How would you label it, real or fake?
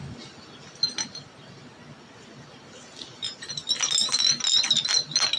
real